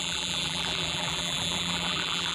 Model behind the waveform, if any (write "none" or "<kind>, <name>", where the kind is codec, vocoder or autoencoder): vocoder, BigVGAN v2